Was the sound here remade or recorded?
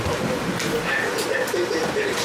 recorded